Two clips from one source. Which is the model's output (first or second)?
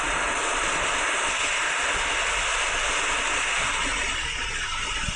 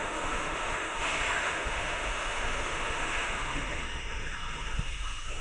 second